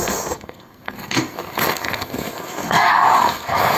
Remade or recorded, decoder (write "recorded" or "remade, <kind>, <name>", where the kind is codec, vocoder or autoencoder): remade, codec, SNAC